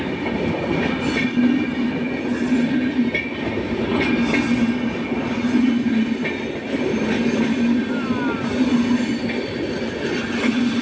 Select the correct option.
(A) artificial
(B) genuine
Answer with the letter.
B